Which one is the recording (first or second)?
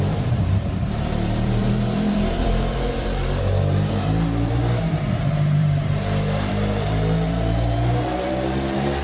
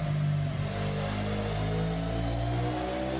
second